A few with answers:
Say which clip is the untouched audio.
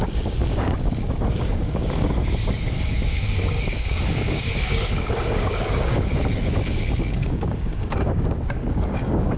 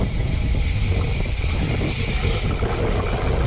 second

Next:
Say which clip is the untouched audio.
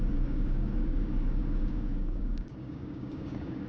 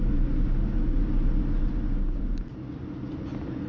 second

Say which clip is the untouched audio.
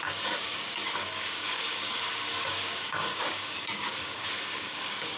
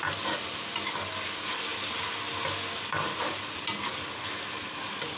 second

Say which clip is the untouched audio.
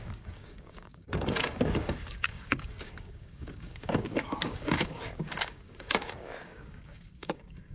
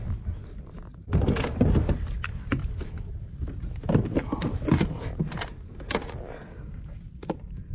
second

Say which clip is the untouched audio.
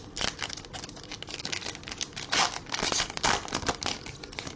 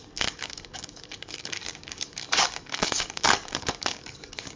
first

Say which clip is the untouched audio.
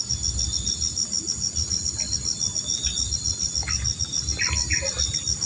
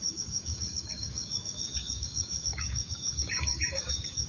first